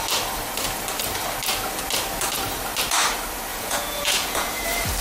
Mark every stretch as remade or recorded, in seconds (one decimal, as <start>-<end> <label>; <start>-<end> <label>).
0.0-3.5 recorded; 3.5-4.6 remade; 4.6-5.0 recorded